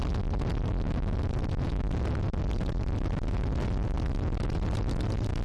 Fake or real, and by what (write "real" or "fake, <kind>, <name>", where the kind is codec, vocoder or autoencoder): real